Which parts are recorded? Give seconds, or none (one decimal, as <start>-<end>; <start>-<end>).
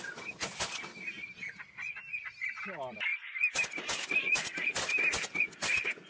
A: 0.0-6.1